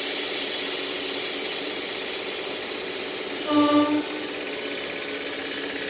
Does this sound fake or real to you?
real